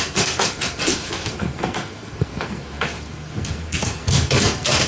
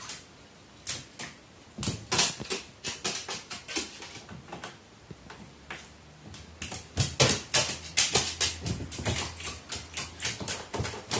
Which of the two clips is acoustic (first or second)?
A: second